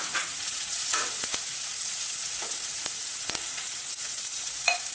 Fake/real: fake